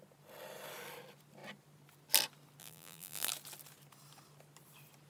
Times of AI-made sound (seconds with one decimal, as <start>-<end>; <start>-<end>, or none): 2.6-3.3